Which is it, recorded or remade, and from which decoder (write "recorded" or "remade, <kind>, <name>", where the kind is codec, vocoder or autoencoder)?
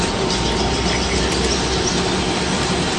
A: recorded